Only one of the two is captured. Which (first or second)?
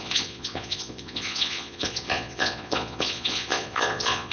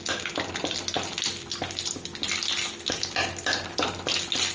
second